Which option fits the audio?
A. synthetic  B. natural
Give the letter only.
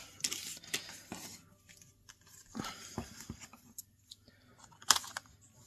B